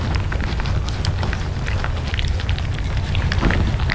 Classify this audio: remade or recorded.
recorded